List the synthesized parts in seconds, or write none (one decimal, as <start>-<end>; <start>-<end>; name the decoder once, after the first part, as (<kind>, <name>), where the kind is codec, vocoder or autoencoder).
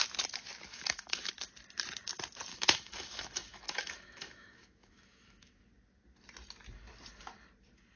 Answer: 0.7-1.3 (autoencoder, DAC-VAE); 2.5-5.6